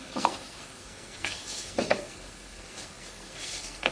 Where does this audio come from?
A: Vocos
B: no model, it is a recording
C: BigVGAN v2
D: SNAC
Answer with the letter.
D